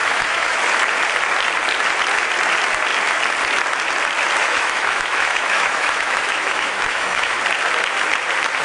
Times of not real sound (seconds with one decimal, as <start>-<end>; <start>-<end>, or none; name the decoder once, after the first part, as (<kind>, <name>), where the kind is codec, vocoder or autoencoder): 0.0-0.6 (autoencoder, DAC-VAE); 4.4-7.4